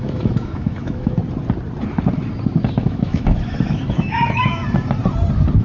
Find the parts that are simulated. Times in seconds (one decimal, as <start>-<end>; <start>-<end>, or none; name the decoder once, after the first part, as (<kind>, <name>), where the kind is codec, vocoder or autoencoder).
0.0-1.2 (autoencoder, DAC-VAE); 2.8-4.6